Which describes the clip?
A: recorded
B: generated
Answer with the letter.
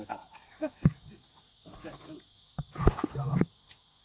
A